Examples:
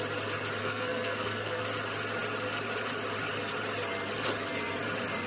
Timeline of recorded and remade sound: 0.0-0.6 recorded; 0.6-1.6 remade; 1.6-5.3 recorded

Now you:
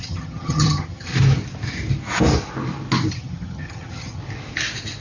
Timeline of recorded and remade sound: 0.0-1.1 remade; 1.1-3.1 recorded; 3.1-4.2 remade; 4.2-5.0 recorded

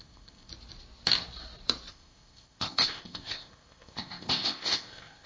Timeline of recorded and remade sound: 0.0-0.5 remade; 0.5-1.9 recorded; 1.9-5.3 remade

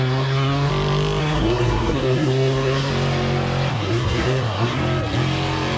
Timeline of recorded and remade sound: 0.0-0.7 remade; 0.7-1.2 recorded; 1.2-2.9 remade; 2.9-3.7 recorded; 3.7-4.8 remade; 4.8-5.8 recorded

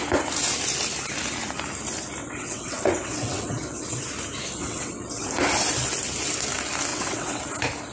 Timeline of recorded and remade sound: 0.0-2.2 recorded; 2.2-4.0 remade; 4.0-4.6 recorded; 4.6-5.3 remade; 5.3-6.9 recorded; 6.9-7.4 remade; 7.4-7.9 recorded

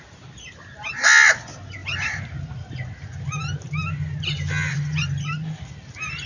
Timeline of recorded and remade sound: 0.0-6.3 recorded

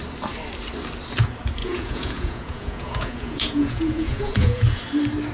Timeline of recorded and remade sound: 0.0-1.6 recorded; 1.6-4.8 remade; 4.8-5.3 recorded

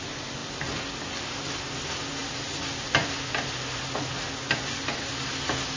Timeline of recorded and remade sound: 0.0-5.8 recorded